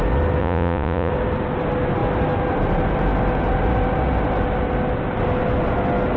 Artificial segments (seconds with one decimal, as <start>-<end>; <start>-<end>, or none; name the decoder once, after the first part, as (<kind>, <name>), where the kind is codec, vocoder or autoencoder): 0.4-1.1 (vocoder, Vocos)